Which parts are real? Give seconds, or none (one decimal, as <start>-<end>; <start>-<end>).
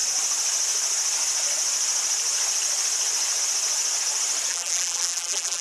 0.0-4.5